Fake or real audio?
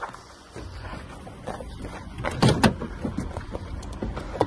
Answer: fake